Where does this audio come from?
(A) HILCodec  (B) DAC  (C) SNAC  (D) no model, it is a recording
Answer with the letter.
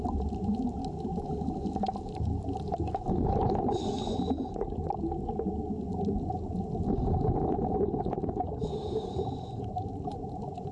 D